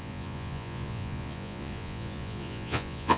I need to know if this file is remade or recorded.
remade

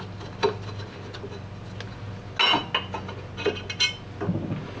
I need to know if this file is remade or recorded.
recorded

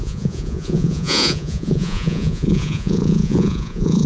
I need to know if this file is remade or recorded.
remade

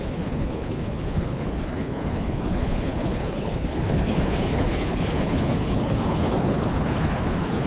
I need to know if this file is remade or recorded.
remade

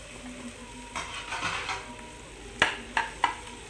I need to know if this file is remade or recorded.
recorded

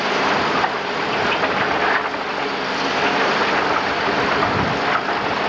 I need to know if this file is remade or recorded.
remade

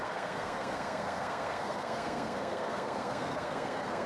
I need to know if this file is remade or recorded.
remade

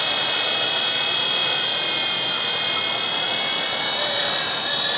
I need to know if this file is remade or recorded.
recorded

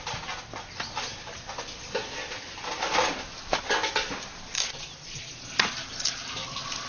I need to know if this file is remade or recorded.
recorded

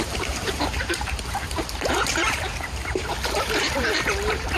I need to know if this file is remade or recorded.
remade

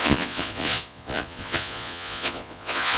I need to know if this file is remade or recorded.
remade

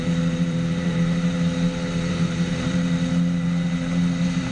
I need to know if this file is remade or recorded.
remade